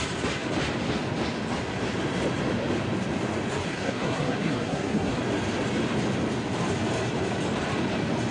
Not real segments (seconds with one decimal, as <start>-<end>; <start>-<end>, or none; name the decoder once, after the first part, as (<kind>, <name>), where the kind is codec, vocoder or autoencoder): 3.7-5.2 (codec, SNAC)